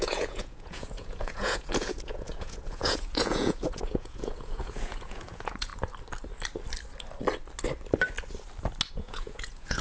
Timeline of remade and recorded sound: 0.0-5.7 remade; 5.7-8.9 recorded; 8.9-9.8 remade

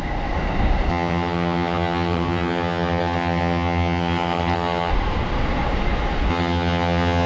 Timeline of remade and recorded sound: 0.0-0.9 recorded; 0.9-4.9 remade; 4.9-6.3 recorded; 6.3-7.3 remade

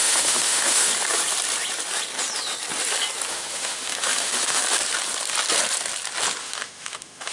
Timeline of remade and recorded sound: 0.0-0.9 remade; 0.9-3.3 recorded; 3.3-4.6 remade; 4.6-6.4 recorded; 6.4-7.3 remade